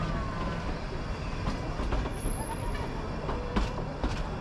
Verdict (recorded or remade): recorded